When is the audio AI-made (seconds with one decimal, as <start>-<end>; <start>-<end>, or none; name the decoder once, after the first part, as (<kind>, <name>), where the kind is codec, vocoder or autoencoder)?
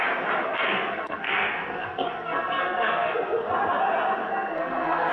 0.4-3.5 (codec, SNAC); 4.2-5.1